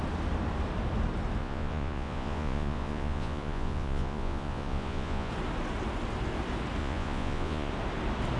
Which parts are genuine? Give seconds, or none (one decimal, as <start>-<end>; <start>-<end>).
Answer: 0.0-1.4; 5.3-6.8; 7.7-8.4